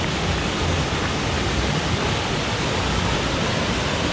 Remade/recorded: recorded